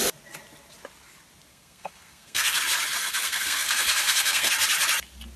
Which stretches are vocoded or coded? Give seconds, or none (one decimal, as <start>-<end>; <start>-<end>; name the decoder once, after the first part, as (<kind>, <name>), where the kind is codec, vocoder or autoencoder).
1.5-2.6 (codec, SNAC); 3.0-4.5